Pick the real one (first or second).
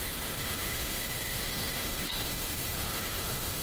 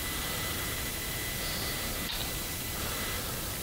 second